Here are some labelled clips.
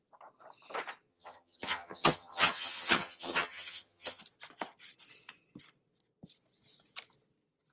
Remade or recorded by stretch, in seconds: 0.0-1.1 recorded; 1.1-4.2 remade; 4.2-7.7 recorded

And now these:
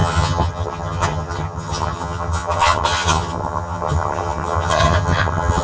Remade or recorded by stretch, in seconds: 0.0-5.6 remade

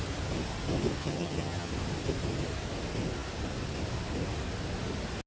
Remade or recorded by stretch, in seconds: 0.0-1.0 recorded; 1.0-1.7 remade; 1.7-5.3 recorded

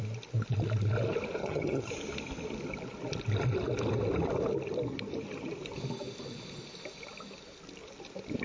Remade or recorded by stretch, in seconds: 0.0-1.4 recorded; 1.4-1.9 remade; 1.9-8.4 recorded

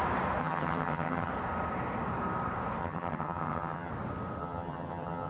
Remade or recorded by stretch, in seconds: 0.0-0.4 recorded; 0.4-1.3 remade; 1.3-2.8 recorded; 2.8-3.9 remade; 3.9-4.4 recorded; 4.4-5.3 remade